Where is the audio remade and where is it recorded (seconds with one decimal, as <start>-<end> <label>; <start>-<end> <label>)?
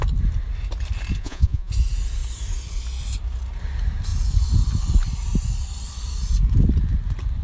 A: 0.0-1.2 recorded; 1.2-1.7 remade; 1.7-7.4 recorded